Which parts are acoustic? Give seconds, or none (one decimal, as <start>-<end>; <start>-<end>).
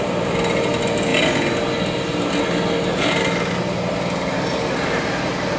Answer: 0.0-5.6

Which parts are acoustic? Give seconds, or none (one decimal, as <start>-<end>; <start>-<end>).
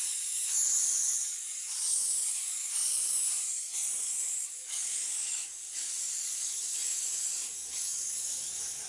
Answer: 3.3-4.1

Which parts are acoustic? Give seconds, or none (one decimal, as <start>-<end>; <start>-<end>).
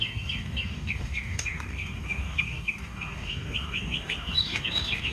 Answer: none